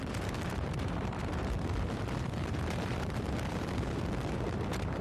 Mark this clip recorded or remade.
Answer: remade